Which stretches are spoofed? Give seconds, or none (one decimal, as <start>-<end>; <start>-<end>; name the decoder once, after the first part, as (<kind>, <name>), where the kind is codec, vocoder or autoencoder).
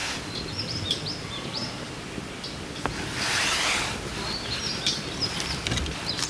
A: none